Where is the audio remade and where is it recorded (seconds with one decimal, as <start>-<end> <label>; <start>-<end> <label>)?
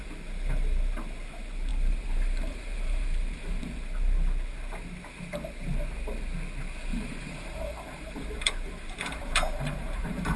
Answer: 0.0-1.7 recorded; 1.7-3.6 remade; 3.6-6.9 recorded; 6.9-10.4 remade